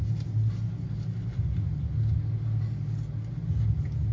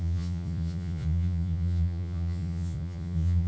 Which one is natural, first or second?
first